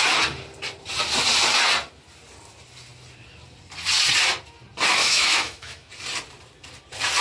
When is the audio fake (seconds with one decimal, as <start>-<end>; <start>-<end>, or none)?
5.0-5.9